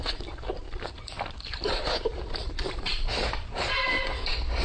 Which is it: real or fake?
fake